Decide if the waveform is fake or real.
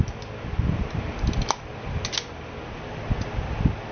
real